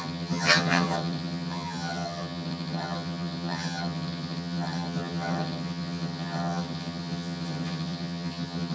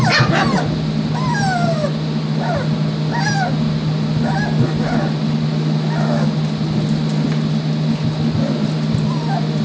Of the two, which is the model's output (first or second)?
first